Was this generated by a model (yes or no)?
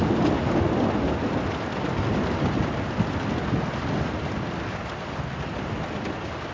no